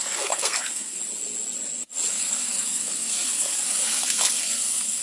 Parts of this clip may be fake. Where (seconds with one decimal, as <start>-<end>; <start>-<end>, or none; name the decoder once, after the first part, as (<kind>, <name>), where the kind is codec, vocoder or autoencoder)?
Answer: 0.0-1.0 (codec, SNAC); 2.1-5.0